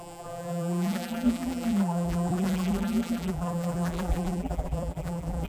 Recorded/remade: remade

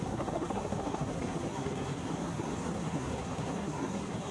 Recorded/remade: remade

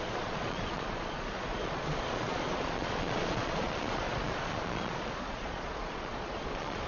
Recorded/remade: remade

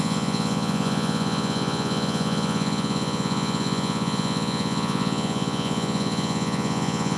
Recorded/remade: remade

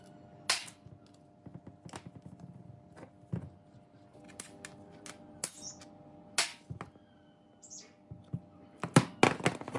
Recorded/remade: recorded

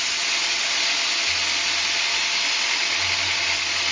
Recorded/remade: recorded